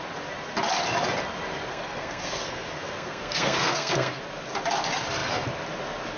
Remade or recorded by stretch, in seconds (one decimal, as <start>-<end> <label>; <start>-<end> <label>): 0.0-1.7 recorded; 1.7-4.2 remade; 4.2-6.2 recorded